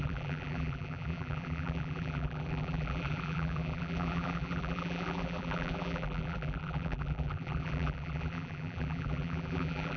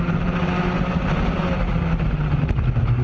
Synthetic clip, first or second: first